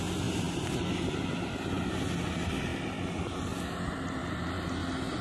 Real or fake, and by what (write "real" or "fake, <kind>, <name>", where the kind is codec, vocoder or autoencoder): real